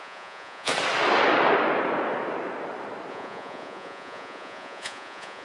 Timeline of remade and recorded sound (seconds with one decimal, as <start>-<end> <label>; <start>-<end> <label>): 0.0-0.7 remade; 0.7-3.1 recorded; 3.1-5.4 remade